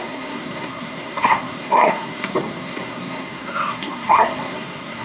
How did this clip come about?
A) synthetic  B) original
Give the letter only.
A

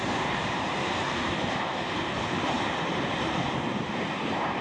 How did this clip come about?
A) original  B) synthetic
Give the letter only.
B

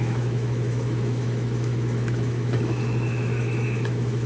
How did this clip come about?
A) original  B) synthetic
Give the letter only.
B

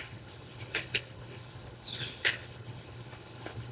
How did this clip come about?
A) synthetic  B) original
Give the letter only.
A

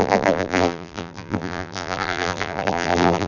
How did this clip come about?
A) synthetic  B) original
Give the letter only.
A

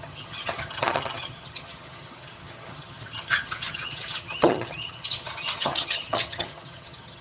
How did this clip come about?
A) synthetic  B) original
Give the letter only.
A